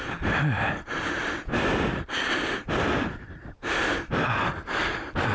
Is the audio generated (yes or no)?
no